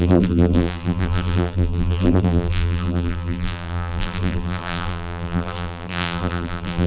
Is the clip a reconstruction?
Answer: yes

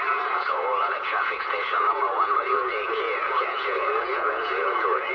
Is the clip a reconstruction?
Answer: yes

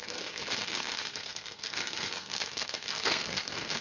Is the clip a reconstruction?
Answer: yes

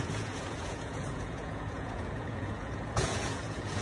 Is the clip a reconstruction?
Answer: yes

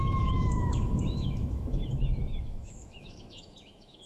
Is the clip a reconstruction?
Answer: yes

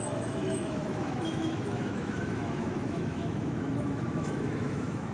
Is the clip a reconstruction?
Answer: yes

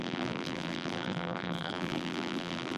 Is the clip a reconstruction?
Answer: yes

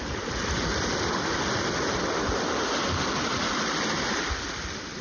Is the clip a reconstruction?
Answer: yes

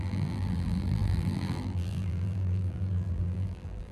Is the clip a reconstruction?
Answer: yes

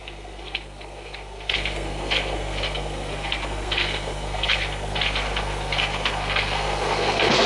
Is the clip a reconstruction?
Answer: yes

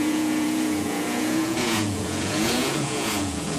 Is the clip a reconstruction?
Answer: yes